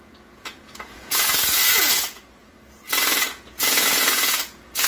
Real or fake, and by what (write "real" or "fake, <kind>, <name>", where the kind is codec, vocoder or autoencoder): fake, vocoder, Vocos